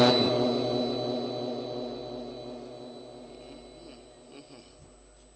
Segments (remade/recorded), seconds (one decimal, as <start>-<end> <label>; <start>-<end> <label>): 0.0-5.4 recorded